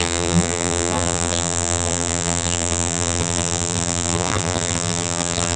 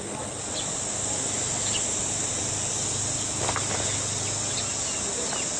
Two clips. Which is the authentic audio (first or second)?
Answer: second